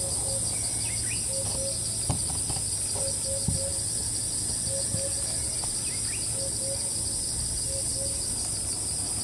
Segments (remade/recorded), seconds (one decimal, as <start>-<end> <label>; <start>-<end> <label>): 0.0-9.2 recorded